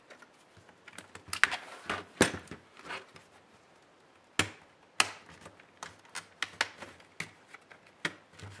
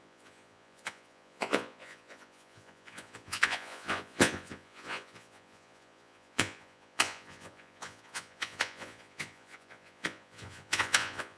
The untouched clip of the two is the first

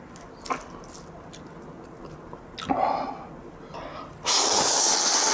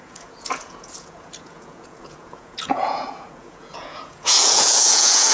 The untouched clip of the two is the first